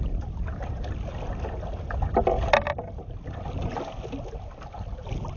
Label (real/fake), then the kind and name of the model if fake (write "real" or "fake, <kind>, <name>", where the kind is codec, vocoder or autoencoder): real